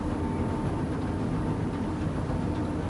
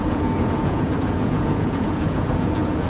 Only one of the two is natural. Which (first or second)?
first